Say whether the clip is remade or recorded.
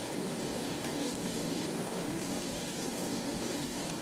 remade